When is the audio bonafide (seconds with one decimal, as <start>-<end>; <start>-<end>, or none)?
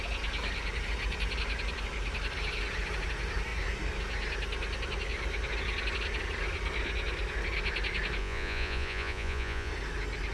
0.0-8.2; 9.7-10.3